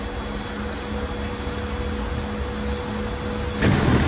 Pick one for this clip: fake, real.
real